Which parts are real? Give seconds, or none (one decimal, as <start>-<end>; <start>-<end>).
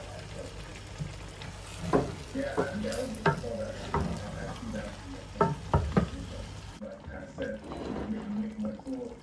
0.0-9.2